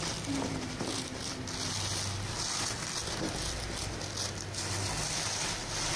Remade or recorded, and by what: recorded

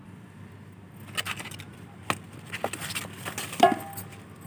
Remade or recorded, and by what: recorded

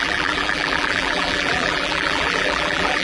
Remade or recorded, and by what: remade, vocoder, BigVGAN v2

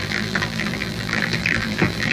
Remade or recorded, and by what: remade, vocoder, BigVGAN v2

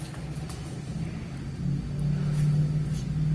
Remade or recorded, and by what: recorded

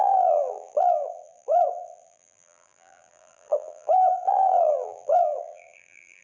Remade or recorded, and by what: remade, vocoder, BigVGAN v2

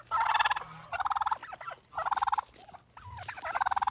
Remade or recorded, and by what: recorded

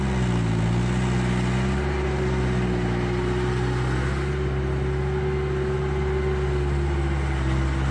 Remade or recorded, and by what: recorded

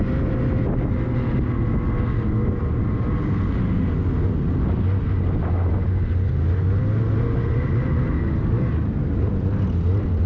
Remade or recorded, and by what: recorded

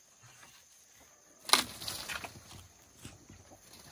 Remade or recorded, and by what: recorded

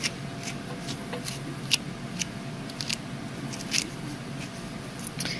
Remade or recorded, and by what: remade, vocoder, BigVGAN v2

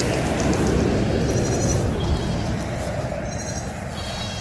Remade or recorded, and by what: recorded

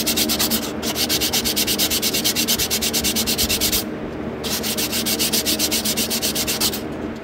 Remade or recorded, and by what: recorded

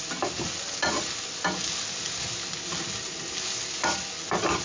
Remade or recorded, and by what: recorded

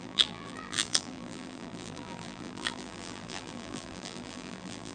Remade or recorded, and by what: remade, vocoder, BigVGAN v2